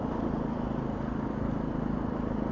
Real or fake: real